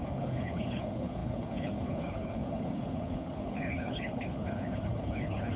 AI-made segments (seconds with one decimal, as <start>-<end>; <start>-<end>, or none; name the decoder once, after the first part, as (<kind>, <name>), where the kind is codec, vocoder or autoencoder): 0.0-5.6 (codec, HILCodec)

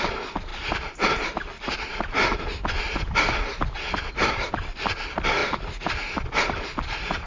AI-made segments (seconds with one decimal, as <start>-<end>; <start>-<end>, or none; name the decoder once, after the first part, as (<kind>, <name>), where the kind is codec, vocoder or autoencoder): none